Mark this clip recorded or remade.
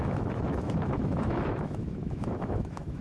remade